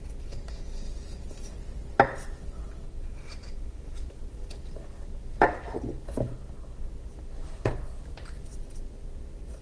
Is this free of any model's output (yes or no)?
yes